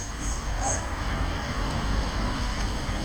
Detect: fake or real fake